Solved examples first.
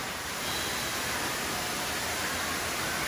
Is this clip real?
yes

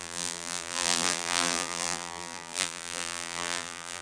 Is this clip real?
no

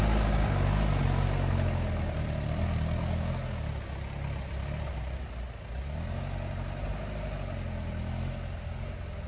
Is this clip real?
yes